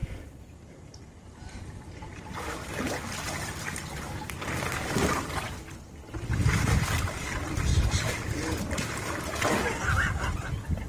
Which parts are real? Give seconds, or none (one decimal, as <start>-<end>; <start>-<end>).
0.0-10.9